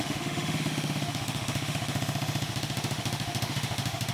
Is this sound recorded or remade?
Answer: remade